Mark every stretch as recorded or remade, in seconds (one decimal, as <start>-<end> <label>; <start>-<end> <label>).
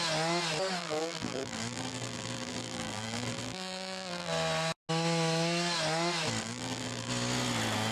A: 0.0-0.8 recorded; 0.8-4.3 remade; 4.3-6.4 recorded; 6.4-7.1 remade; 7.1-7.9 recorded